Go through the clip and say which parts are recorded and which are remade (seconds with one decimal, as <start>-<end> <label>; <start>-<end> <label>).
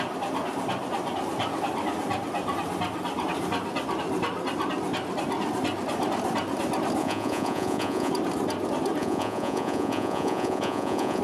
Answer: 0.0-7.0 recorded; 7.0-8.1 remade; 8.1-9.0 recorded; 9.0-11.2 remade